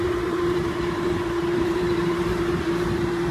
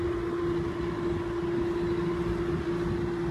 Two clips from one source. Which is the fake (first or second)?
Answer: first